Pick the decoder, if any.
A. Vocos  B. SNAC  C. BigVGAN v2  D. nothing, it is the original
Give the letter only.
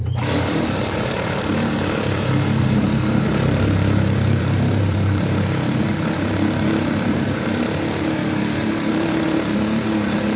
C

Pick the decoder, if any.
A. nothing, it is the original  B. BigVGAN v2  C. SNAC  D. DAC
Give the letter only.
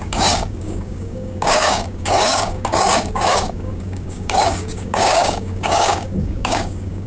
D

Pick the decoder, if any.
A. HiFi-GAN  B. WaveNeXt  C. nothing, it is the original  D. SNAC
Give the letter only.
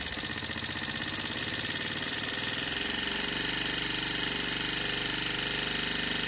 C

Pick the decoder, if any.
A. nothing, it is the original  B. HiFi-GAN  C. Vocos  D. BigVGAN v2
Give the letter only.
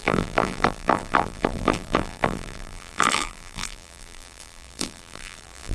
D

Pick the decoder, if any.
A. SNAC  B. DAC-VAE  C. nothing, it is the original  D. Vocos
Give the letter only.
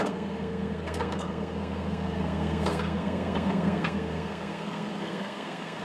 A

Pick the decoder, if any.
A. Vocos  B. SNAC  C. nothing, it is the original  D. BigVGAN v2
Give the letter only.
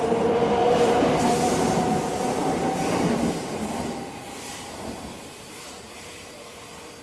D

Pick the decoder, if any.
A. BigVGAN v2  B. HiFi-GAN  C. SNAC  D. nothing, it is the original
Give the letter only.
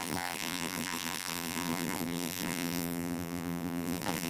A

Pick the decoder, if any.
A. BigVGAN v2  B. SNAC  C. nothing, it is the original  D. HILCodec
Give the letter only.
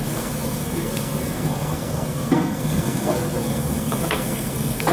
B